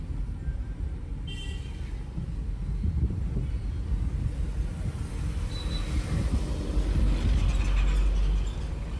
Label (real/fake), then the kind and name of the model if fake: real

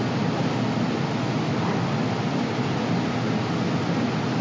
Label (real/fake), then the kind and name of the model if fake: real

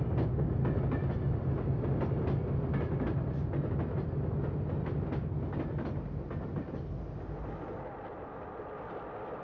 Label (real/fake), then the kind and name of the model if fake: real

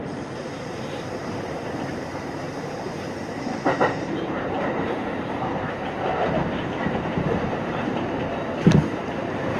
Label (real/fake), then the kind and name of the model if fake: fake, vocoder, BigVGAN v2